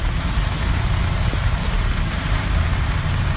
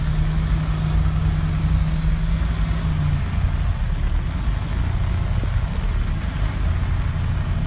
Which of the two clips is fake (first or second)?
first